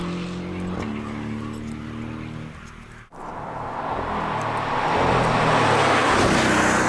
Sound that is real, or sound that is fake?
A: real